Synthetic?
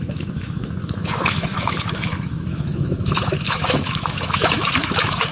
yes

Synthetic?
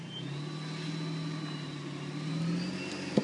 no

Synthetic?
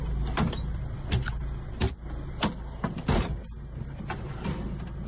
no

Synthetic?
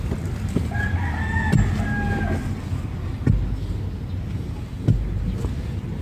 no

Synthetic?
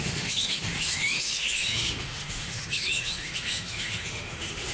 yes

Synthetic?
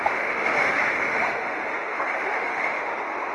yes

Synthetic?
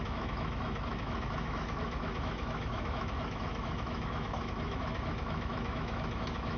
yes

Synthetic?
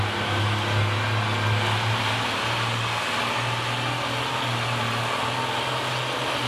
no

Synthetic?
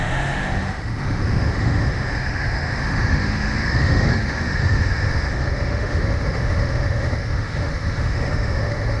yes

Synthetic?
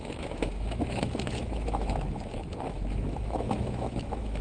yes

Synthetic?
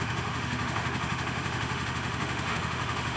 yes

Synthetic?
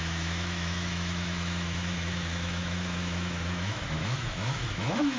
yes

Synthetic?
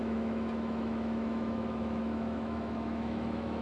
yes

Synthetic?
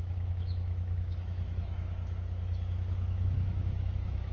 yes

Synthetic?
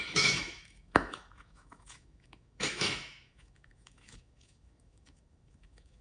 yes